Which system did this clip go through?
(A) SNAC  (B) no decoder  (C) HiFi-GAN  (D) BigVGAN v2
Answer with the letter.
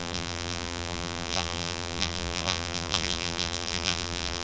D